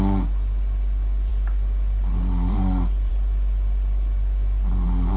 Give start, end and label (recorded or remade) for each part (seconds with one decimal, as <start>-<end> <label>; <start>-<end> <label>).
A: 0.0-5.2 recorded